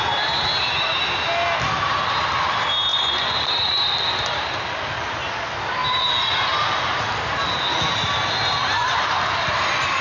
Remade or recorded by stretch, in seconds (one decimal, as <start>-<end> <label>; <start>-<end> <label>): 0.0-2.9 recorded; 2.9-3.5 remade; 3.5-10.0 recorded